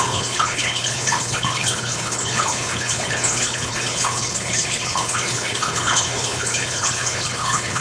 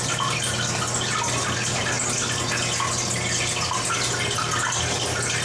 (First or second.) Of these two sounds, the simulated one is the first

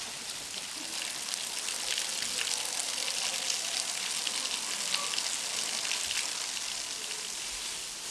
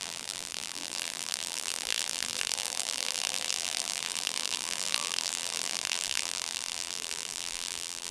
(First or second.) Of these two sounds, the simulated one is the second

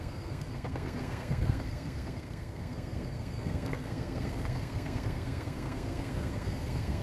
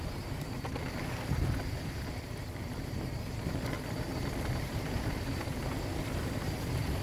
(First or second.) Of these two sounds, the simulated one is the first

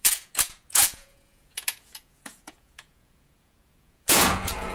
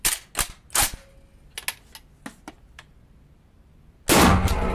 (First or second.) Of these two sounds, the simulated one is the first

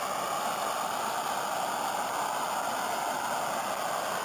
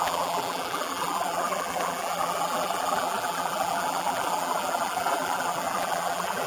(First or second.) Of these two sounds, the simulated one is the second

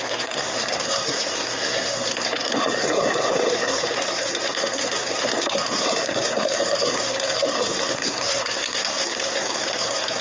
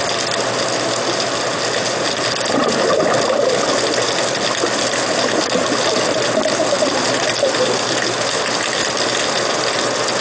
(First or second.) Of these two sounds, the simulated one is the first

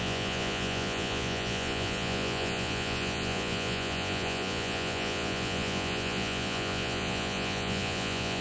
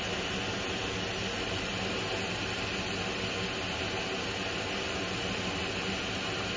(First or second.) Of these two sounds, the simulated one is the first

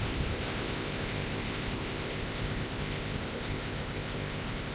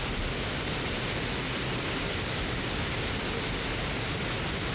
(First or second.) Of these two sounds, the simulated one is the first